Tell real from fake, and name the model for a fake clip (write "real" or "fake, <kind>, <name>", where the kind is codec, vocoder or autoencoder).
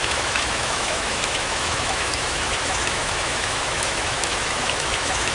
fake, autoencoder, DAC-VAE